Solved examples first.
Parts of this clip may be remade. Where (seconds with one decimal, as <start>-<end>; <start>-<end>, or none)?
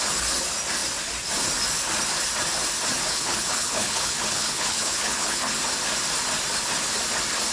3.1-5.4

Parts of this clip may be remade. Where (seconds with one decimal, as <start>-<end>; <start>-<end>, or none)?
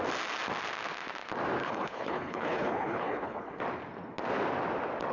1.6-3.6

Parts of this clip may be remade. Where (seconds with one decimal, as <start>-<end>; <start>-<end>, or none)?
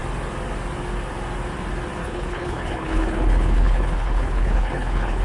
2.0-5.2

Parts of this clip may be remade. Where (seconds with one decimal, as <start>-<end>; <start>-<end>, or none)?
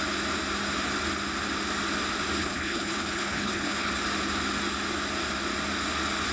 2.4-3.9